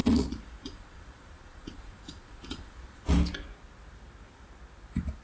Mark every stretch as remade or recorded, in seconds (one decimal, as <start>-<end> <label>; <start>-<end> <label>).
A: 0.0-3.1 remade; 3.1-5.2 recorded